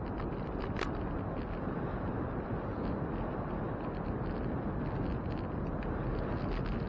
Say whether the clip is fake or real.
real